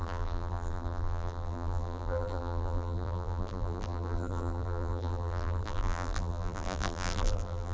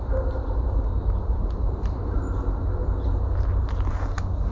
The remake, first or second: first